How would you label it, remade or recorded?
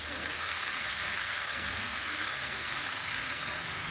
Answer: remade